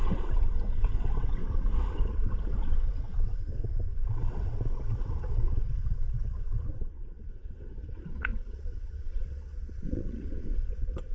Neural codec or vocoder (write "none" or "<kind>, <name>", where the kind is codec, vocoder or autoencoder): vocoder, WaveNeXt